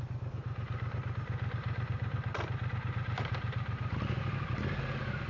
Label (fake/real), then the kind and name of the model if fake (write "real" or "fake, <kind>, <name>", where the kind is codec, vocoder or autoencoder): fake, vocoder, BigVGAN v2